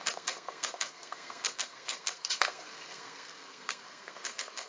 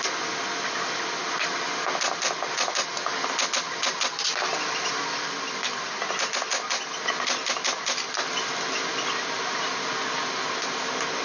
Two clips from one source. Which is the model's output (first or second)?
first